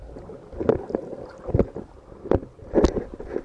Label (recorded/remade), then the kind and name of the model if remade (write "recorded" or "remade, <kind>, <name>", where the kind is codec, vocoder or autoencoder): recorded